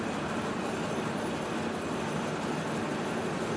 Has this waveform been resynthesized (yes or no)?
no